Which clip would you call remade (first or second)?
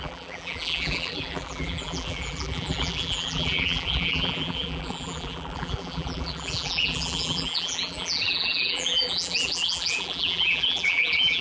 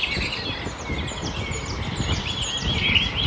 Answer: first